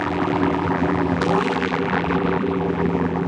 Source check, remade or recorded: remade